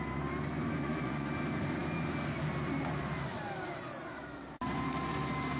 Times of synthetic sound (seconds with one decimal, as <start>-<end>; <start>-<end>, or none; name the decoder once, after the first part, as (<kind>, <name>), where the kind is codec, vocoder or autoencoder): 0.8-1.3 (vocoder, Vocos)